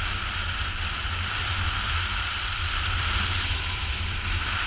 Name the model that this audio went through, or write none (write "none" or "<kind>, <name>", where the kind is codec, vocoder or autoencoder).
vocoder, BigVGAN v2